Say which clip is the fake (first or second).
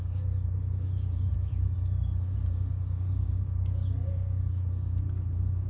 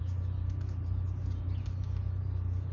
first